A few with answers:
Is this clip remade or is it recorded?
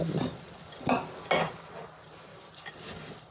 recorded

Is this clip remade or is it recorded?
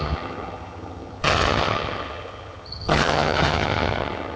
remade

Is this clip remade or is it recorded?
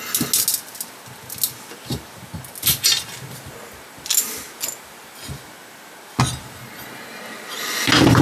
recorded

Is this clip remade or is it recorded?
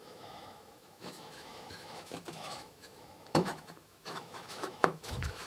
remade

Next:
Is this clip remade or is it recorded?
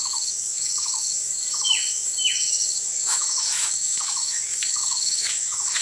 remade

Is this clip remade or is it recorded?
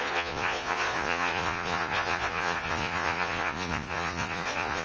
remade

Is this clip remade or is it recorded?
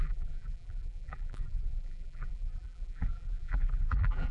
remade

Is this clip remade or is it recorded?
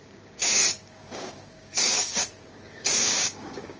remade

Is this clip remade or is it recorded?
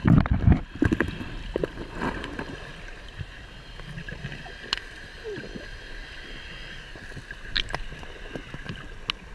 recorded